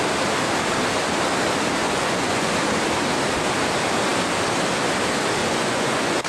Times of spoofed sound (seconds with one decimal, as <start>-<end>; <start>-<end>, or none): 1.8-2.5; 5.4-6.3